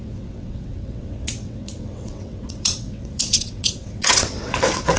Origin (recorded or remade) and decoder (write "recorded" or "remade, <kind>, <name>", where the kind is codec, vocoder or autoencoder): remade, vocoder, WaveNeXt